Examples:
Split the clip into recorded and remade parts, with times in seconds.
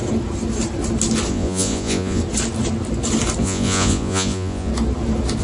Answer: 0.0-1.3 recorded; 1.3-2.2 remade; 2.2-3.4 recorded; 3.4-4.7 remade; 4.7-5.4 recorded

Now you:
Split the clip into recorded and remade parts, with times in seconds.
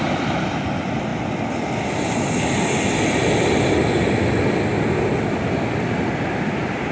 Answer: 0.0-6.9 recorded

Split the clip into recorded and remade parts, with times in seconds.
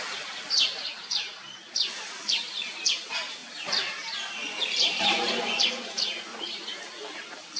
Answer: 0.0-6.3 recorded; 6.3-6.8 remade; 6.8-7.6 recorded